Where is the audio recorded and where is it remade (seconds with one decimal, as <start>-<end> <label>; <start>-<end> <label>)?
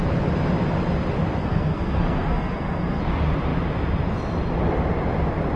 0.0-1.4 recorded; 1.4-3.0 remade; 3.0-5.6 recorded